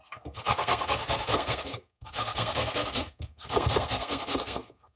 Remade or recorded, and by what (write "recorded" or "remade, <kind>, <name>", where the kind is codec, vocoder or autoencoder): remade, codec, SNAC